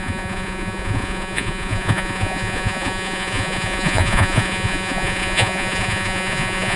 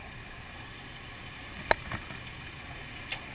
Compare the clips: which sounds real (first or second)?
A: second